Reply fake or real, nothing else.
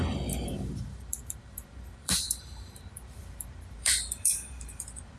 fake